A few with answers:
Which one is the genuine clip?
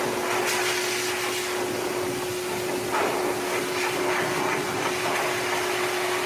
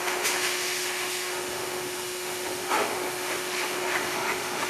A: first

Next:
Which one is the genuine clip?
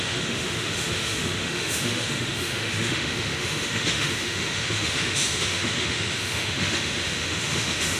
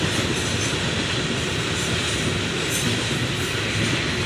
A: second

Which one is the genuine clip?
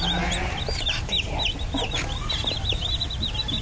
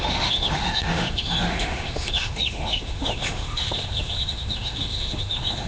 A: first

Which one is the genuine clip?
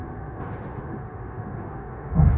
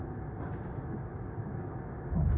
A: second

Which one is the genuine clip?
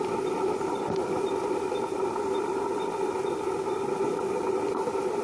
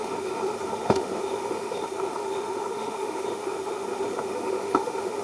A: first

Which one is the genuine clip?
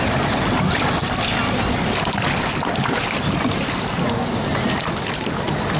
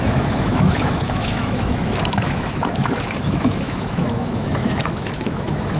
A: first